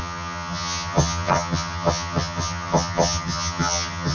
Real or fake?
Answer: fake